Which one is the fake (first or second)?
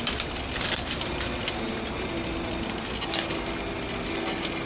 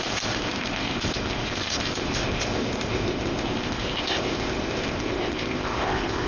second